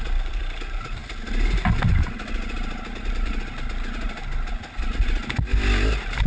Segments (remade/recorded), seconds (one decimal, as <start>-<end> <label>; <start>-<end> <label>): 0.0-6.3 recorded